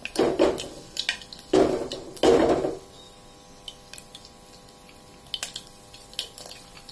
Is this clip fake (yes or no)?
no